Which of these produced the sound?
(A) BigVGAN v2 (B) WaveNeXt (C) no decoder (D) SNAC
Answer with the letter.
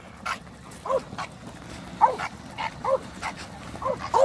C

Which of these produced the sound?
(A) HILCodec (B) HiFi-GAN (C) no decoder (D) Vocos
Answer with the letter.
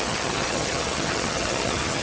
B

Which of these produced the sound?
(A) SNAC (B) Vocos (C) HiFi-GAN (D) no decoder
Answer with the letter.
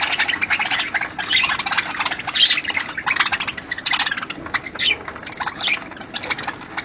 D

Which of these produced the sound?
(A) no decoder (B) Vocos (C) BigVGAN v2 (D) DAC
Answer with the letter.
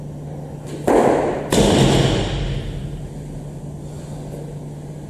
A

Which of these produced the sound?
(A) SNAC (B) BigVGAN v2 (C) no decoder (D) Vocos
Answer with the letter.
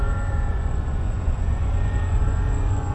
D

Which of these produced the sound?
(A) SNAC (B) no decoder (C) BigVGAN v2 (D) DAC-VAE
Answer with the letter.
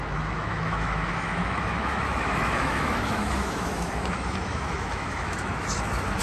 D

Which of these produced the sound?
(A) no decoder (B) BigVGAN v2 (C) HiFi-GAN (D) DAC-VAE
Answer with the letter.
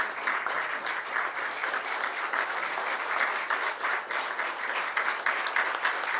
A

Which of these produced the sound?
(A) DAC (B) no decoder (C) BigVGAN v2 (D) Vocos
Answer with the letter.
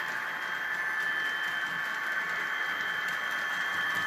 B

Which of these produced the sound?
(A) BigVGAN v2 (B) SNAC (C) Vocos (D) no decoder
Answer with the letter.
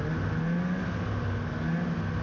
D